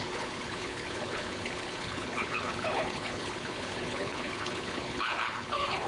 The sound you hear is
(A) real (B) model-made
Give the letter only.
B